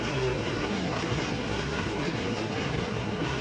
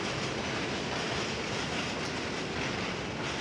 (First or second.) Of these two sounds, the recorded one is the second